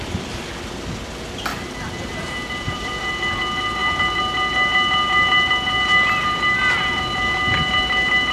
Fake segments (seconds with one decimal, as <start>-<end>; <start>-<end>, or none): 1.5-3.0